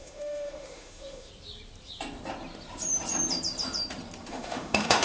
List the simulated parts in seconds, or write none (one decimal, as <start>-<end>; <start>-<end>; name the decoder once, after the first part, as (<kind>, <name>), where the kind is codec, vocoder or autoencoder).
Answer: 0.0-1.3 (autoencoder, DAC-VAE); 4.3-5.0